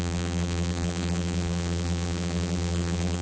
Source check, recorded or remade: remade